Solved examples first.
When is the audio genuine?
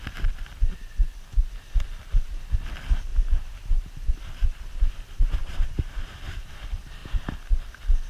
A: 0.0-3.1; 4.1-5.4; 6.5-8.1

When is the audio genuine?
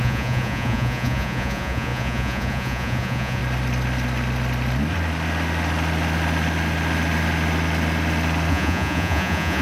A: 3.4-8.5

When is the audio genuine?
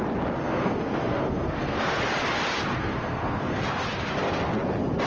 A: 0.0-0.4; 2.0-2.7; 3.6-5.1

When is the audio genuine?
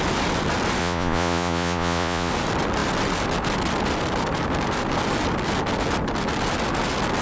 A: 0.0-0.8; 2.3-7.2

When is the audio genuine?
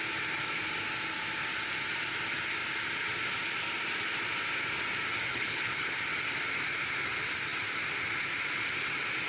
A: 0.0-5.3; 5.9-9.3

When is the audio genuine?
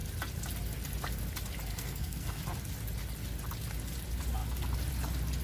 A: 0.0-1.7; 2.4-5.4